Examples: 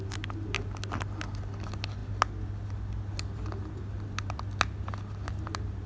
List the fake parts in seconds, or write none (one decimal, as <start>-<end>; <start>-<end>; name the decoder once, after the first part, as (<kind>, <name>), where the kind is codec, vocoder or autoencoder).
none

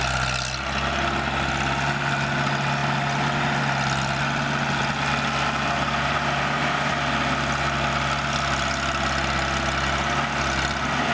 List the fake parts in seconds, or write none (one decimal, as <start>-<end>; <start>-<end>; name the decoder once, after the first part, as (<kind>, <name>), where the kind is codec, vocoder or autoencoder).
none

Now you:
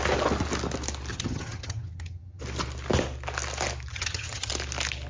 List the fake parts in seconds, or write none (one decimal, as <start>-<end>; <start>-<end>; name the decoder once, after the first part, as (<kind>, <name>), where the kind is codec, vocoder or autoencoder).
1.1-2.4 (vocoder, HiFi-GAN); 3.9-4.5